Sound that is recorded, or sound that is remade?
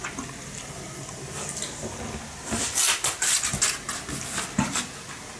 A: recorded